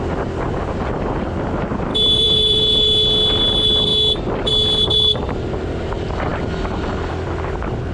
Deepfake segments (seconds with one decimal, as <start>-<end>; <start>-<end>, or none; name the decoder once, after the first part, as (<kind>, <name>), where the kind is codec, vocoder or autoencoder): 1.9-2.6 (vocoder, BigVGAN v2)